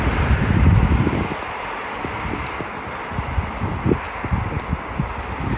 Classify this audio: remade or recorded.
recorded